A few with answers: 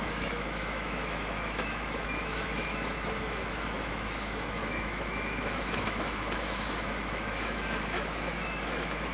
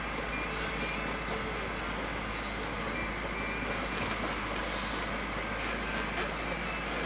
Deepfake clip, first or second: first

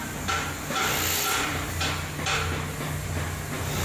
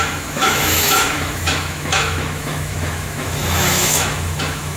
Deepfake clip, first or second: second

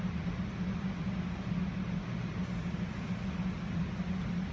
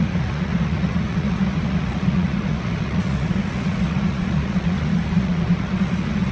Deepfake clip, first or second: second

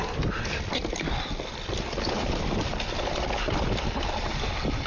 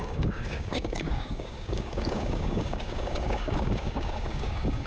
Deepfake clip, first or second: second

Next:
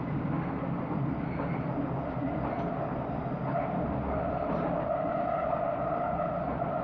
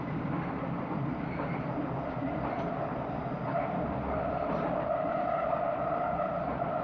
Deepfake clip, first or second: second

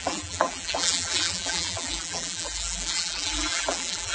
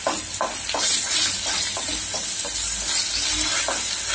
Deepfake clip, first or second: first